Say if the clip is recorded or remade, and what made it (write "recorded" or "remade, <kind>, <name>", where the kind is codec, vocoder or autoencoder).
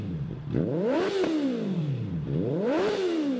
remade, vocoder, BigVGAN v2